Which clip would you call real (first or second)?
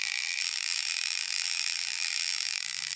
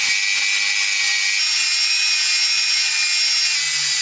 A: second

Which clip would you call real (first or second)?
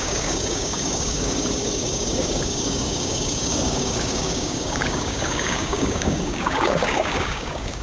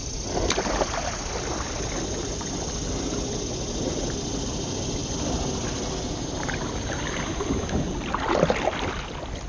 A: second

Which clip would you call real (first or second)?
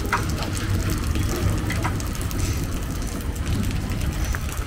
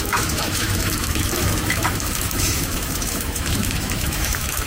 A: first